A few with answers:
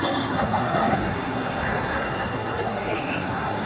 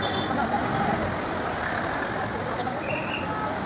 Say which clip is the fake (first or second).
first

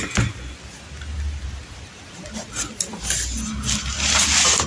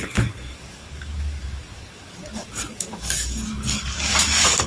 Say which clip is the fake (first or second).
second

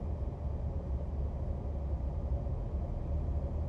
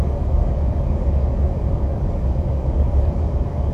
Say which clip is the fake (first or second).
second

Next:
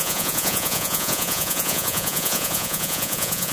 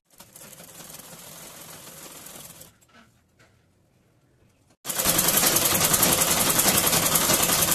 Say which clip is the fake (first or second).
first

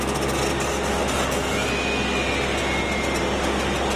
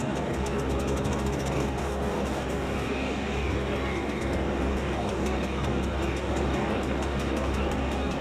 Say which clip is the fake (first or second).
second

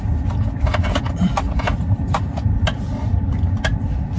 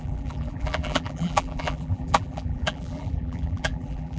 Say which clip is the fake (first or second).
second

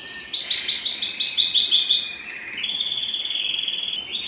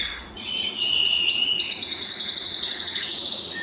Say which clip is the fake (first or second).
second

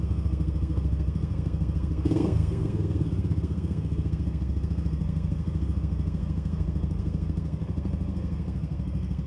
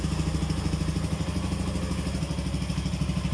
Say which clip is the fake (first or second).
first